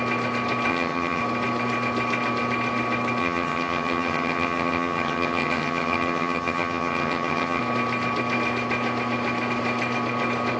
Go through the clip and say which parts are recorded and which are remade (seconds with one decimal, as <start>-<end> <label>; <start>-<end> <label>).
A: 0.0-0.7 recorded; 0.7-1.2 remade; 1.2-3.2 recorded; 3.2-7.6 remade; 7.6-10.6 recorded